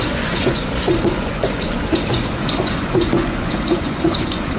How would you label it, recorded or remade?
remade